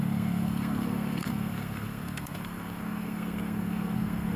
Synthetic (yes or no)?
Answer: yes